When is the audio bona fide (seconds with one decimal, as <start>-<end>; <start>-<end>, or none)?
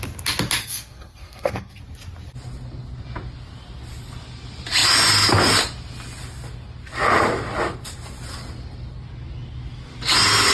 0.0-0.6; 1.8-10.5